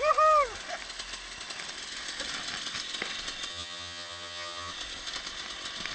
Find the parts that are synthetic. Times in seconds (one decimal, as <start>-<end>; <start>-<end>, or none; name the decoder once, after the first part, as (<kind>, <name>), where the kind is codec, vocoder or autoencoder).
3.5-4.7 (vocoder, HiFi-GAN)

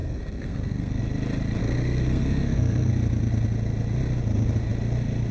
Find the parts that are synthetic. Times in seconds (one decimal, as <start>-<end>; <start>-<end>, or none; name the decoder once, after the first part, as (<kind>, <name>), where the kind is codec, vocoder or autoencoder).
0.0-1.0 (codec, SNAC); 1.6-2.9

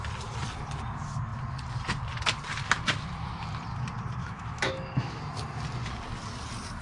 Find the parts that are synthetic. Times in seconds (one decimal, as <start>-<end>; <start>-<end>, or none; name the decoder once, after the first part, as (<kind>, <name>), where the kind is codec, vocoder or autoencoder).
4.2-5.2 (autoencoder, DAC-VAE)

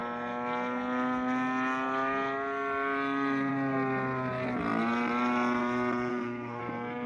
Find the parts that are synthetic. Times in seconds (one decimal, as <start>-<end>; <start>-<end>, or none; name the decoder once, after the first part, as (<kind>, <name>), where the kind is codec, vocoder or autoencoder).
6.1-6.6 (codec, SNAC)